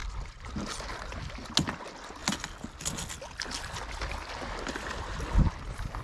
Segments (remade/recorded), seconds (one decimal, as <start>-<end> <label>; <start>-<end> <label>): 0.0-6.0 recorded